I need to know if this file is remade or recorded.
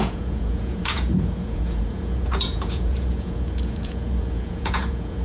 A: remade